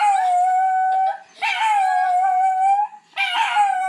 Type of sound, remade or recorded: recorded